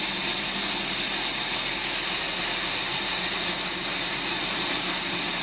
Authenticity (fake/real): real